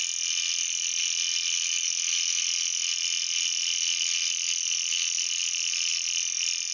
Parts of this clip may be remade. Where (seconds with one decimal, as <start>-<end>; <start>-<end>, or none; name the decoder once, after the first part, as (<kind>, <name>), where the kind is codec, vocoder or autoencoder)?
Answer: none